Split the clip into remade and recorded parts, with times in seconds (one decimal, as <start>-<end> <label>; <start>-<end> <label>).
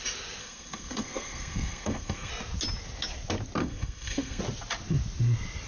0.0-0.4 recorded; 0.4-2.3 remade; 2.3-3.6 recorded; 3.6-4.4 remade; 4.4-5.7 recorded